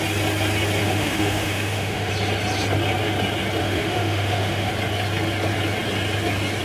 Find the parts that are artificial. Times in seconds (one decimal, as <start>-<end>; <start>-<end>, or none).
0.8-2.1; 3.6-4.7